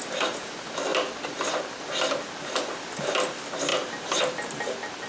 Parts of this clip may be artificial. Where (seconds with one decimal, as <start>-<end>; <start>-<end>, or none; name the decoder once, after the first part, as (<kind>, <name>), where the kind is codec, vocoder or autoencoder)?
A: none